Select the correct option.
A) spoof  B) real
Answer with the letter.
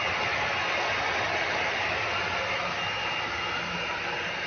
B